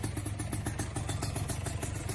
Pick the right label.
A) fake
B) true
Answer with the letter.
B